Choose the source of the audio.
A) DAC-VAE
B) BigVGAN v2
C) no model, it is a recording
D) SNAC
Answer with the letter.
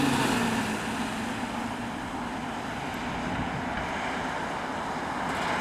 C